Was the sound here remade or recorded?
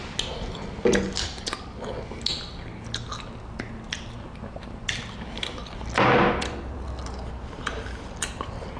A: recorded